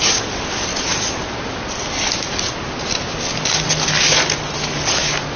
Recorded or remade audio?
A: recorded